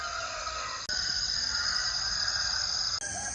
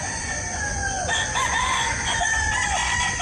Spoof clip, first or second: second